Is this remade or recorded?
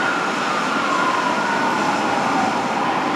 recorded